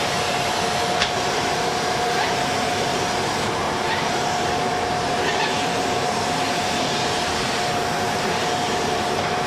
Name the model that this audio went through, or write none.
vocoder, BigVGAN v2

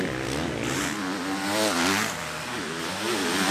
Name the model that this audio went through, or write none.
none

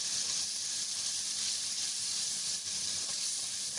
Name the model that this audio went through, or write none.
vocoder, BigVGAN v2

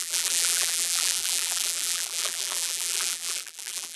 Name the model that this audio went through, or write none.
vocoder, BigVGAN v2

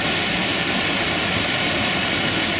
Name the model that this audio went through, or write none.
none